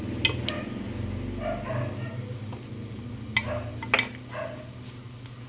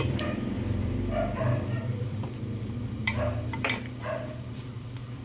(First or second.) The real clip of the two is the first